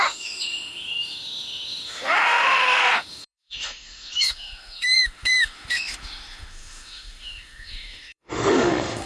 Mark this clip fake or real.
fake